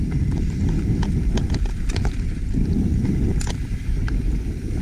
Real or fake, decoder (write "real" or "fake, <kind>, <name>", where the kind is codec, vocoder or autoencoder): real